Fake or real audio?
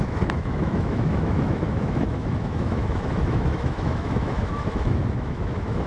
fake